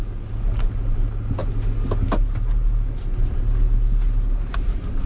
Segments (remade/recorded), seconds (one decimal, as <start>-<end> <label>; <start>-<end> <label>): 0.0-5.1 recorded